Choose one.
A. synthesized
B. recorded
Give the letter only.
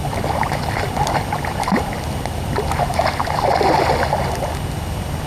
B